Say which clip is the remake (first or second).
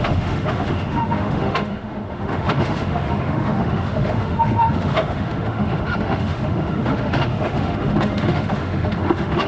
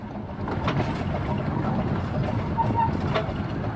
first